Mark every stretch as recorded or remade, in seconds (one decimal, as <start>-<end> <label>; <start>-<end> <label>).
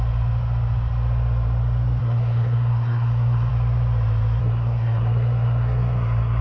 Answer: 0.0-2.0 recorded; 2.0-3.5 remade; 3.5-4.4 recorded; 4.4-6.4 remade